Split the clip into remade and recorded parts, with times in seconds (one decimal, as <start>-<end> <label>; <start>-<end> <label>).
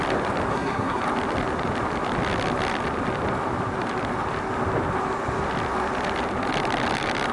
0.0-0.5 recorded; 0.5-1.0 remade; 1.0-7.3 recorded